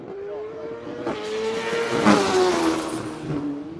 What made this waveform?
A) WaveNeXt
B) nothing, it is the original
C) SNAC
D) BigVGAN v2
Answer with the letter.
B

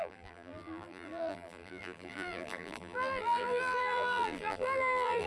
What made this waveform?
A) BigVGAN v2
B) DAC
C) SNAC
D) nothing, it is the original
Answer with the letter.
A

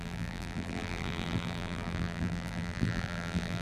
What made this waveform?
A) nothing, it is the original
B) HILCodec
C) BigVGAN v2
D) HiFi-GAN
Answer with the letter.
C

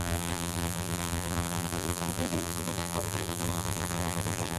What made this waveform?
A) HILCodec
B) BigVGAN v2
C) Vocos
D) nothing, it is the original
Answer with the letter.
B